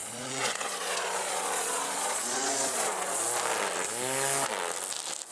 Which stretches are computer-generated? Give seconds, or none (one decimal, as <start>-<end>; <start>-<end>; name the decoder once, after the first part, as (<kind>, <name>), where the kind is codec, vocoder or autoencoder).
0.0-3.2 (vocoder, Vocos)